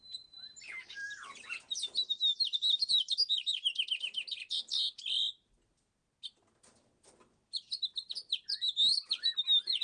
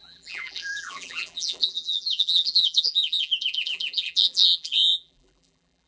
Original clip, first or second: first